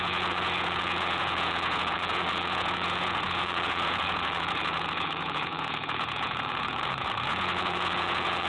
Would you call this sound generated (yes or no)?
yes